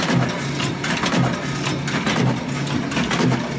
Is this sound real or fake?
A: real